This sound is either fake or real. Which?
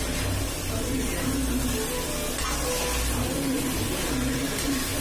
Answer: real